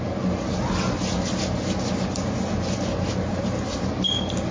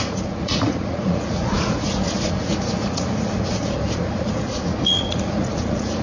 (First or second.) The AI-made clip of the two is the second